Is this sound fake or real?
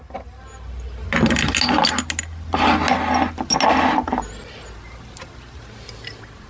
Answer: real